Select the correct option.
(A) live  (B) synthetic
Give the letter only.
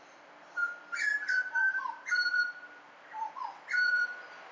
A